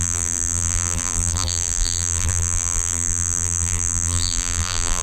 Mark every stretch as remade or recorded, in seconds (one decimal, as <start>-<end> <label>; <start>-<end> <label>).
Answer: 0.0-5.0 remade